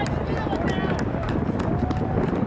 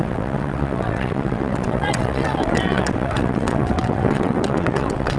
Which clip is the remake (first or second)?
second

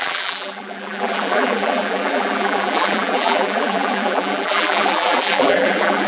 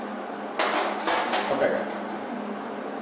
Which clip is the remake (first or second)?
first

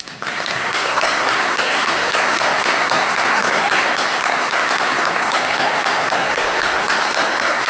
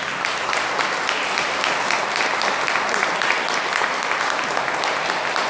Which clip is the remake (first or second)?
first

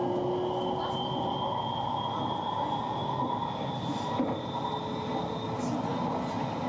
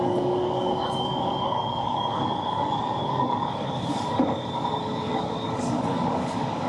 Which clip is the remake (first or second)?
second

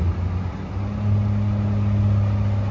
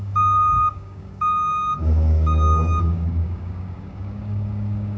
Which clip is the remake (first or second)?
second